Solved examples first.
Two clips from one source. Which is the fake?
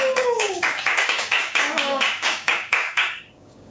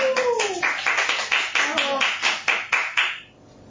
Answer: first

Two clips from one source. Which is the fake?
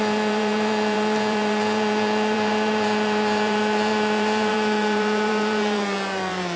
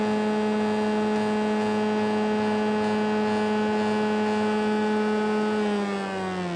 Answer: first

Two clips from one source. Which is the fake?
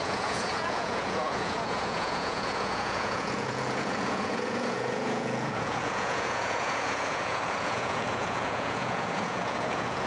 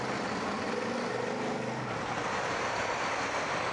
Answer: first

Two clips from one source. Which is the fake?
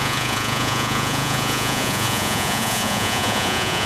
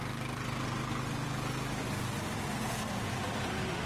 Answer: first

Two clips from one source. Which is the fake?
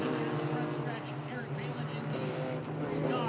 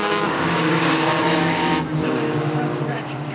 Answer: second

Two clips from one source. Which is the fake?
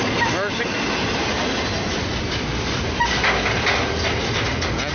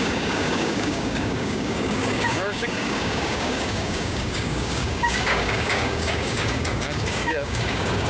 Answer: second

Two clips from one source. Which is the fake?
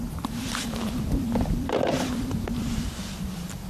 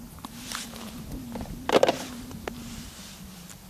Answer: first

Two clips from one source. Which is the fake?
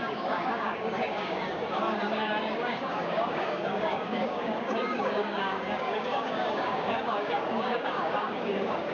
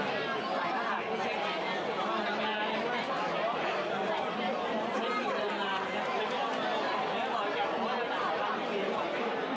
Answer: first